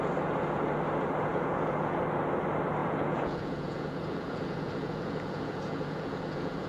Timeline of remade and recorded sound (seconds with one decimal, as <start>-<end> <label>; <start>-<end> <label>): 0.0-1.3 recorded; 1.3-2.0 remade; 2.0-2.8 recorded; 2.8-6.7 remade